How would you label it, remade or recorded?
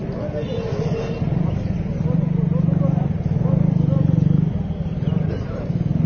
recorded